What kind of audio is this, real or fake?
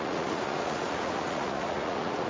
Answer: fake